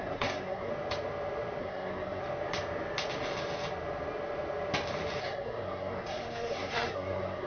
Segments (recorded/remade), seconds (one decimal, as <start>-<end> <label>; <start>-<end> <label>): 0.0-0.7 remade; 0.7-1.6 recorded; 1.6-2.2 remade; 2.2-5.2 recorded; 5.2-7.5 remade